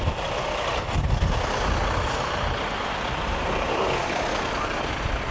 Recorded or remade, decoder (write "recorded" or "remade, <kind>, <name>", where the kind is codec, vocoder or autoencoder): recorded